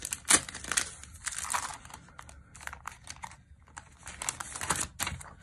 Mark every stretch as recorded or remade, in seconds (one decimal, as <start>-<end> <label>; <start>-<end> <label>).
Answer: 0.0-5.4 recorded

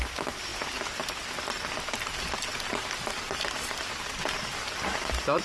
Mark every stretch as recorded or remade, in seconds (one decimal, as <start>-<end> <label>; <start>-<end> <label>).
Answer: 0.0-5.4 recorded

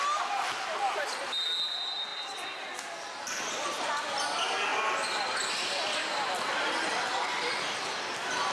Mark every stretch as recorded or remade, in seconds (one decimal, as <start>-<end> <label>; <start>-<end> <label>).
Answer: 0.0-8.5 recorded